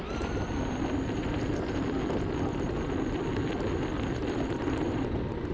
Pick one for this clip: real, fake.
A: real